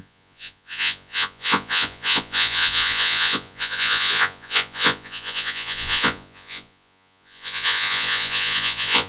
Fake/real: fake